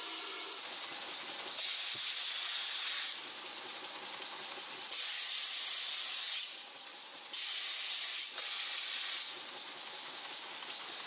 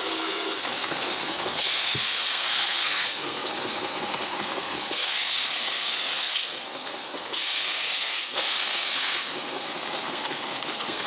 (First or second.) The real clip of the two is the first